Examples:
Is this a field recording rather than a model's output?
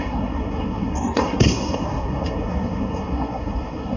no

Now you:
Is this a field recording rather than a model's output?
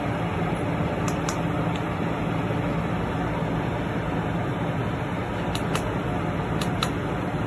yes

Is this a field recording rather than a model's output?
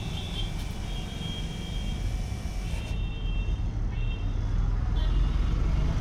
yes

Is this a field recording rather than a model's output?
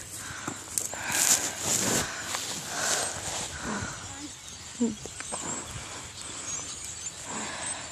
yes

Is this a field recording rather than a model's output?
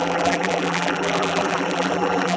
no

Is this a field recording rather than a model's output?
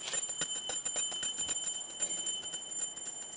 yes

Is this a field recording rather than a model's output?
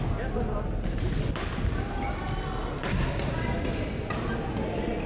yes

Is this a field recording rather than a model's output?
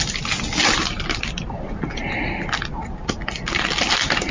yes